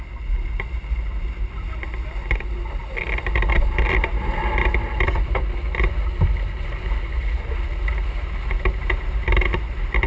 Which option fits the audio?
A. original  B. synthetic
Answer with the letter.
A